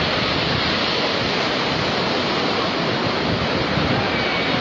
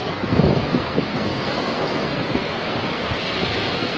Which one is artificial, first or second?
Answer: second